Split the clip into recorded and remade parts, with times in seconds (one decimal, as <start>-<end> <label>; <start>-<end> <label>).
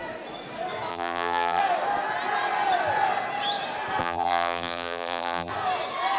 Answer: 0.0-0.9 recorded; 0.9-1.6 remade; 1.6-4.0 recorded; 4.0-5.5 remade; 5.5-6.2 recorded